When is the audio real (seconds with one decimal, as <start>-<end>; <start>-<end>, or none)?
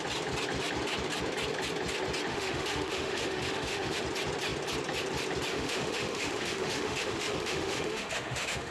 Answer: 0.0-2.3; 4.0-5.5